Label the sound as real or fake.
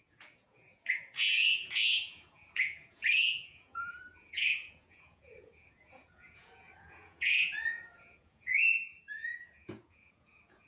fake